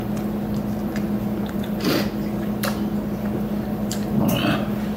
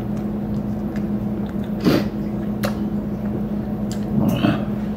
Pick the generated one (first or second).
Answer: first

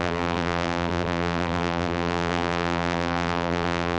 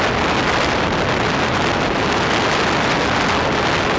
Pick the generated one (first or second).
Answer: first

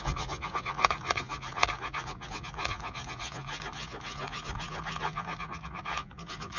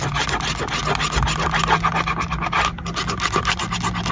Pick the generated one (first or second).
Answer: first